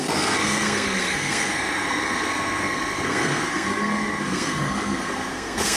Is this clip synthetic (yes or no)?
yes